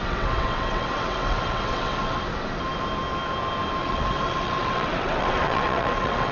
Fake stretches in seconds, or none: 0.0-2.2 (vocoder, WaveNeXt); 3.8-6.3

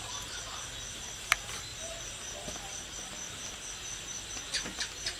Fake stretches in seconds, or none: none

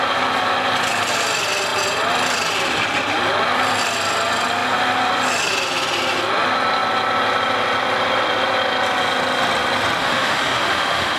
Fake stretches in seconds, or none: 10.0-11.2 (autoencoder, DAC-VAE)